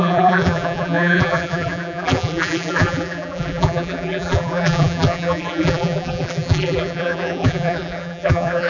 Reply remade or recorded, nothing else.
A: remade